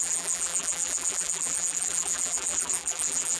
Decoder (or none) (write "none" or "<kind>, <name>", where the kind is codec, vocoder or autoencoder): vocoder, BigVGAN v2